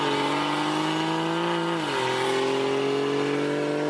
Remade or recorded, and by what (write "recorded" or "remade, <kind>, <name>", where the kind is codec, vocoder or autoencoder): recorded